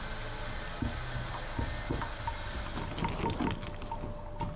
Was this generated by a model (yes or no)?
no